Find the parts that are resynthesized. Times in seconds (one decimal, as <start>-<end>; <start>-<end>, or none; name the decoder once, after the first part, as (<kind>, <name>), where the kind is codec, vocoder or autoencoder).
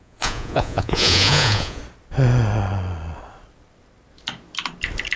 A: 0.0-1.8 (vocoder, Vocos)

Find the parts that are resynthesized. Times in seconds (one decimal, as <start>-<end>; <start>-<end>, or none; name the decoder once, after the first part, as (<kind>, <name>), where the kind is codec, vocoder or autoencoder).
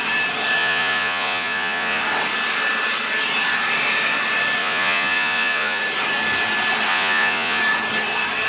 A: 0.6-2.0 (vocoder, Vocos); 4.6-5.8; 6.9-7.6